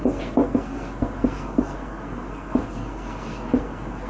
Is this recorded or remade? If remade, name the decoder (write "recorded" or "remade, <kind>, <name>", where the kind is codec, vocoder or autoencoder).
remade, codec, SNAC